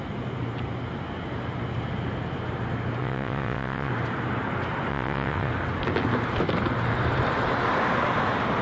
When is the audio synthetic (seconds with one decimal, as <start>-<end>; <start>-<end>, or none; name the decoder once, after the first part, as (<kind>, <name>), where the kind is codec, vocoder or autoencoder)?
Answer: 3.0-3.9 (vocoder, WaveNeXt); 4.9-5.5